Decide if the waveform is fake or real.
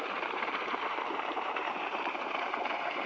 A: fake